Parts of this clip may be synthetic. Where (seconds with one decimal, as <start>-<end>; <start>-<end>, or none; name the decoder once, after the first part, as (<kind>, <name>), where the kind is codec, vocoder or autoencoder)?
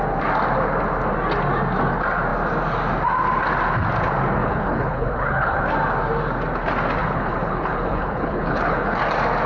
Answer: 4.4-5.6 (codec, HILCodec); 7.0-9.0